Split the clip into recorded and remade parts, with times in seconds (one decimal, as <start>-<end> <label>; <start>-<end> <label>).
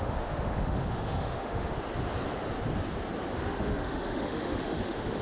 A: 0.0-1.7 remade; 1.7-3.3 recorded; 3.3-5.2 remade